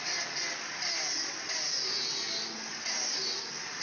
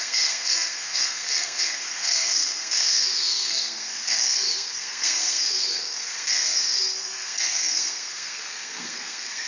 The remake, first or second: second